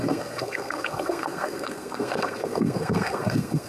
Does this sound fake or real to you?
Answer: fake